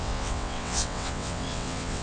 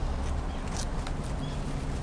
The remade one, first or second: first